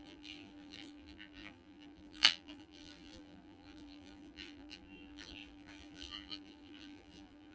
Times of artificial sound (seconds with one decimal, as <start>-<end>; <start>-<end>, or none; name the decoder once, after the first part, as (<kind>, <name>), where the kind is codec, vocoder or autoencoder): 0.0-7.5 (vocoder, BigVGAN v2)